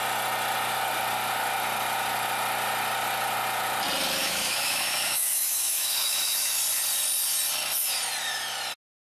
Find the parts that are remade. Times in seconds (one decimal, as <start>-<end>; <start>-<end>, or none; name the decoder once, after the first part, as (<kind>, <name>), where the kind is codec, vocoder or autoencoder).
4.2-6.6 (autoencoder, DAC-VAE)